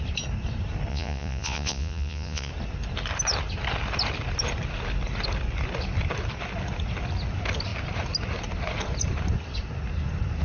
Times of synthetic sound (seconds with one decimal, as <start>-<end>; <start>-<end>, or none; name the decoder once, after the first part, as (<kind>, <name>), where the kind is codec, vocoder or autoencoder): 0.9-2.5 (vocoder, Vocos)